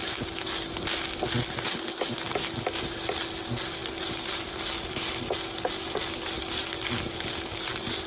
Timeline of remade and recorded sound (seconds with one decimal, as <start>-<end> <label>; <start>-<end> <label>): 0.0-8.1 recorded